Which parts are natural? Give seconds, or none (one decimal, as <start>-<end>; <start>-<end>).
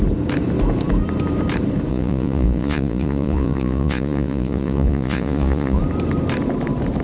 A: 0.0-1.9; 5.8-7.0